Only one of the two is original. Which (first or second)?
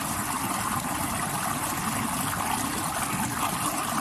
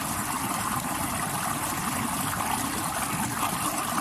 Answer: first